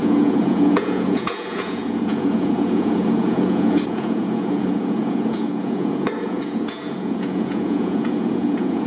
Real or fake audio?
fake